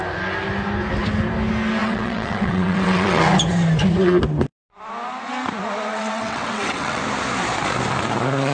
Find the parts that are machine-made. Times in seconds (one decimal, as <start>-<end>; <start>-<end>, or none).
1.8-3.2; 5.9-7.0